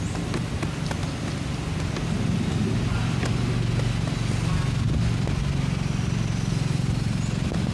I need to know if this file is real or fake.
real